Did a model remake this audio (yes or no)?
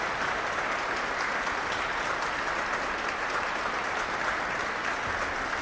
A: no